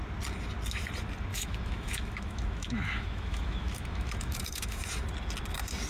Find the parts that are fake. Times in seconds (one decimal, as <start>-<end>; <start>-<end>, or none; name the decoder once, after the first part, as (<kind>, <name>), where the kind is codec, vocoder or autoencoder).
1.3-4.8 (autoencoder, DAC-VAE)